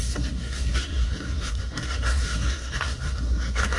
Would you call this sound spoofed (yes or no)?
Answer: yes